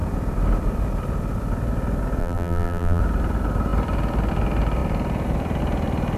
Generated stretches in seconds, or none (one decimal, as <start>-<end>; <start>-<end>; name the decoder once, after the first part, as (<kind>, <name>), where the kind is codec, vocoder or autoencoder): 2.2-3.0 (vocoder, BigVGAN v2)